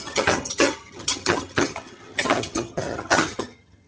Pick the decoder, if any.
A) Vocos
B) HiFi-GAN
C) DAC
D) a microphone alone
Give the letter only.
B